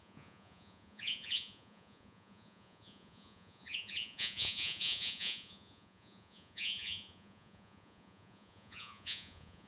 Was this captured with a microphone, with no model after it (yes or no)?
no